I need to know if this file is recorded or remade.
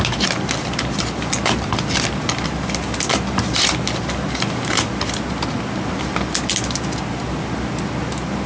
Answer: recorded